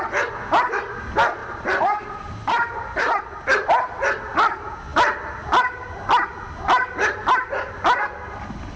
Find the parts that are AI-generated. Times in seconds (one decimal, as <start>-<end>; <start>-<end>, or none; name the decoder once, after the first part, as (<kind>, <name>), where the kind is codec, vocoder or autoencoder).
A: 1.4-3.2 (vocoder, BigVGAN v2)